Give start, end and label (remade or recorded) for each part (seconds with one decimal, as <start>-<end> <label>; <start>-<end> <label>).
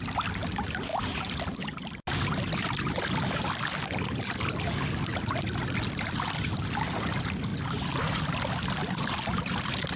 0.0-10.0 recorded